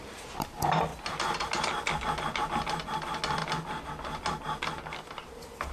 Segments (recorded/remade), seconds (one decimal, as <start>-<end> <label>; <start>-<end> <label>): 0.0-5.7 recorded

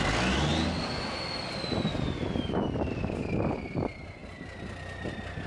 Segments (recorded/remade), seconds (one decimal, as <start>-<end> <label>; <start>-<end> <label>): 0.0-5.5 recorded